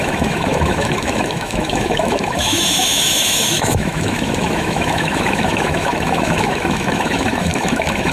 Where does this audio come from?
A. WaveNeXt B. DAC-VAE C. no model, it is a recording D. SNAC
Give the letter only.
B